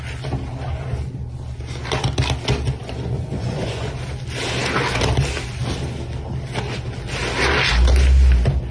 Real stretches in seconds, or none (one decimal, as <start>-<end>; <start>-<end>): 0.0-2.8; 3.9-8.7